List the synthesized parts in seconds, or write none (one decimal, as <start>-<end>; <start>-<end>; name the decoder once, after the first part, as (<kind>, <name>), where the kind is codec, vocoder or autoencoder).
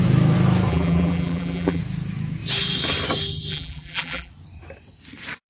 0.7-1.8 (vocoder, BigVGAN v2); 3.5-4.3